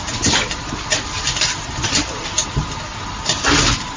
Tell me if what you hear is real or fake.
real